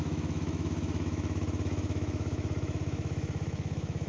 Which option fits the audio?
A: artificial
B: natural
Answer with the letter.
A